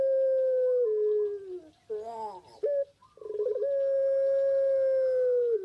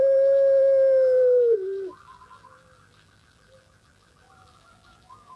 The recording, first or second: first